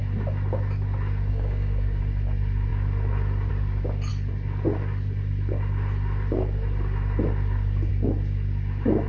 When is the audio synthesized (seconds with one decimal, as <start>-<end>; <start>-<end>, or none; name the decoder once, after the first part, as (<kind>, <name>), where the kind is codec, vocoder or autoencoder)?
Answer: 1.3-2.0 (codec, DAC)